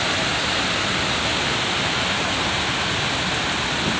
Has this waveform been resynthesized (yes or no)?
no